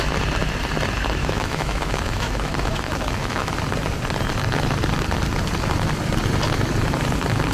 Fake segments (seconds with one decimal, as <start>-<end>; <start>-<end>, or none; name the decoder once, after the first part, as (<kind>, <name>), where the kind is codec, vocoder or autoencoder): 1.2-3.5 (autoencoder, DAC-VAE)